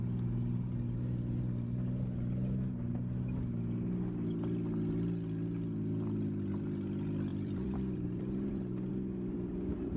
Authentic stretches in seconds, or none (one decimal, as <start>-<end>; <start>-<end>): 0.0-7.3; 8.9-10.0